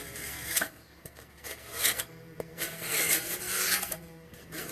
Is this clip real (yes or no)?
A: no